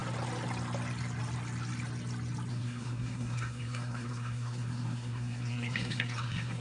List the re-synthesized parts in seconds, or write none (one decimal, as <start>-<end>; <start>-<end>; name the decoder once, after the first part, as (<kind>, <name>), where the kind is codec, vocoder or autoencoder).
2.5-6.6 (codec, SNAC)